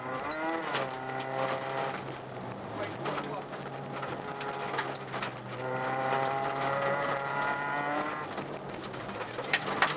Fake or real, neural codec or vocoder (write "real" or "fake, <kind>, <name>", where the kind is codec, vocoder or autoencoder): real